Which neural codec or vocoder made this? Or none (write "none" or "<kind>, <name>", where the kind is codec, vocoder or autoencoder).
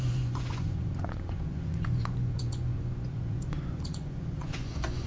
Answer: vocoder, Vocos